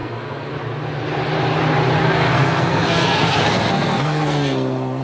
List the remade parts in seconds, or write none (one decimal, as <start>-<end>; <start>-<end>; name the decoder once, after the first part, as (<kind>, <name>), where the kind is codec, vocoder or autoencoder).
0.0-0.5 (codec, SNAC); 2.0-5.0